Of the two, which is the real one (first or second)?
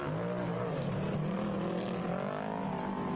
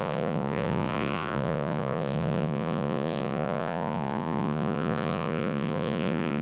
first